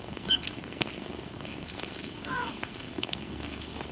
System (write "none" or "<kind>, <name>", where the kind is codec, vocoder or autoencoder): codec, SNAC